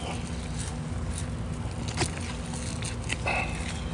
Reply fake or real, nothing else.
real